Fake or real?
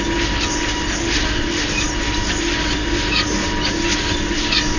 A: real